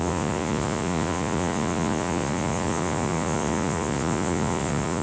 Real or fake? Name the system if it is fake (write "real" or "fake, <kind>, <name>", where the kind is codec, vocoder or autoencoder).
fake, vocoder, Vocos